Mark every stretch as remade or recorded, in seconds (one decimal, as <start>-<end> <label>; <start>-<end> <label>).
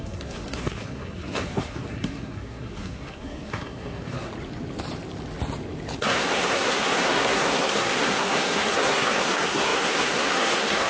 0.0-4.3 remade; 4.3-6.0 recorded; 6.0-10.9 remade